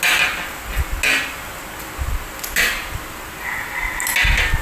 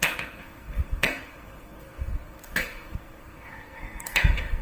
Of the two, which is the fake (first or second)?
second